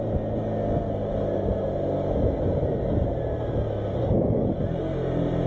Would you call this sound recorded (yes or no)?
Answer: yes